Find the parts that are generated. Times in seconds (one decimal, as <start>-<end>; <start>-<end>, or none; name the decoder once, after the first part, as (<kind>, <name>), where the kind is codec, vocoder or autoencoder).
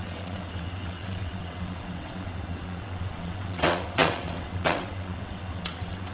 0.0-6.1 (vocoder, WaveNeXt)